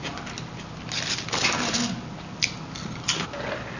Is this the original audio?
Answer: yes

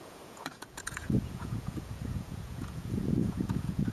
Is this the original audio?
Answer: no